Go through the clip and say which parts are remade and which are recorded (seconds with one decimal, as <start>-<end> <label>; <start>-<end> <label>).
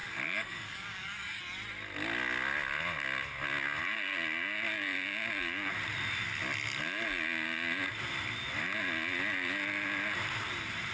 0.0-1.4 remade; 1.4-10.9 recorded